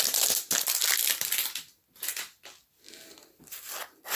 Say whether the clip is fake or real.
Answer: real